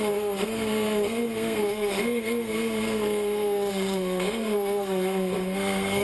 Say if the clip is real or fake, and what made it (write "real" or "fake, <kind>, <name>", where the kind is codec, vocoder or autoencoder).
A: fake, codec, SNAC